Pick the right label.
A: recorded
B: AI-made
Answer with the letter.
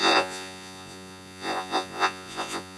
B